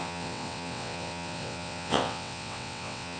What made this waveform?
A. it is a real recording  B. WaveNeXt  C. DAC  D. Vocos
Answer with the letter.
B